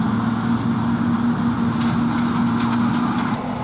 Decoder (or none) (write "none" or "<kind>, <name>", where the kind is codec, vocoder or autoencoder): none